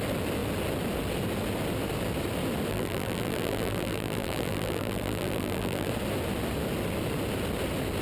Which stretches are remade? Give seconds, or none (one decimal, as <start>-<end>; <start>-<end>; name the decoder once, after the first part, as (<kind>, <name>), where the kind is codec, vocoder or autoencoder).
2.7-5.9 (vocoder, BigVGAN v2)